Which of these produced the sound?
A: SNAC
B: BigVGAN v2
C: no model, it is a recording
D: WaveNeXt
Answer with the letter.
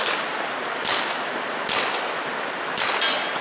C